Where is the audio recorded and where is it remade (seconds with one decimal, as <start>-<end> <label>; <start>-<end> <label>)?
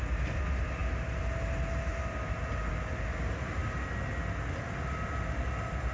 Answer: 0.0-5.9 recorded